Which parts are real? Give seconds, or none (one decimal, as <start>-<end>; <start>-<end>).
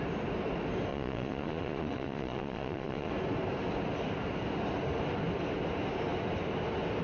0.0-0.9; 3.1-7.0